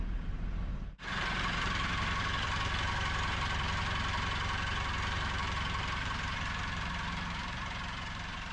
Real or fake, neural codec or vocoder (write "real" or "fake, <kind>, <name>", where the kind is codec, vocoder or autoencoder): fake, vocoder, BigVGAN v2